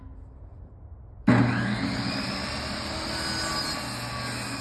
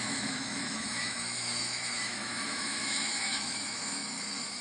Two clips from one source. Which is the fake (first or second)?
second